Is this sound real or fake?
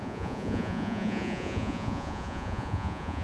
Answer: fake